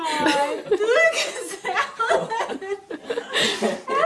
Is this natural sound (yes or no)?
yes